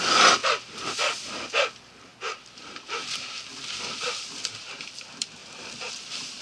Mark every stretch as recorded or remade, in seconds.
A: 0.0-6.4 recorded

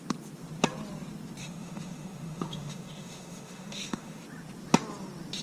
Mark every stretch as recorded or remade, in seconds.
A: 0.0-1.4 recorded; 1.4-4.2 remade; 4.2-5.4 recorded

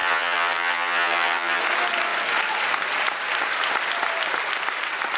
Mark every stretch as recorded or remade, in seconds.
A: 0.0-1.6 remade; 1.6-5.2 recorded